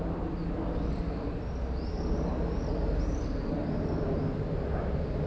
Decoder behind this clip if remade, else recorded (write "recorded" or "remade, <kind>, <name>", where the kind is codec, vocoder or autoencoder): recorded